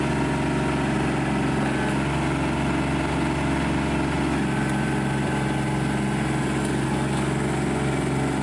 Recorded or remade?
recorded